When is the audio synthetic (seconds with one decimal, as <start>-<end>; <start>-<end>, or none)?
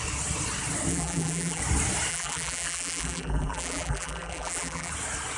0.9-1.6; 2.1-4.9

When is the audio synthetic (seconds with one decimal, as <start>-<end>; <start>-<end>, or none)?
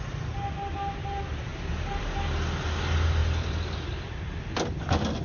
3.2-4.5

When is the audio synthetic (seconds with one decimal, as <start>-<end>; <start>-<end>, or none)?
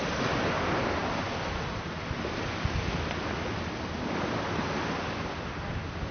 none